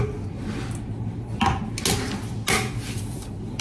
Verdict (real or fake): real